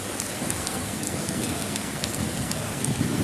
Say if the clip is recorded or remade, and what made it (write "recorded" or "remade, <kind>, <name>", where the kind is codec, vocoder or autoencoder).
remade, codec, SNAC